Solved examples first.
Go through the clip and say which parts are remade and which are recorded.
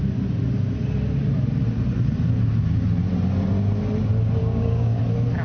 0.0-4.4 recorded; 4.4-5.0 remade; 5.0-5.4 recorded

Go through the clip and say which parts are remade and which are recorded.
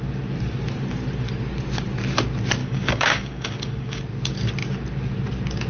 0.0-2.6 recorded; 2.6-4.0 remade; 4.0-5.7 recorded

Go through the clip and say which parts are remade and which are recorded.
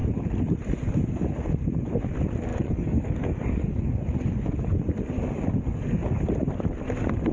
0.0-2.5 recorded; 2.5-3.8 remade; 3.8-7.3 recorded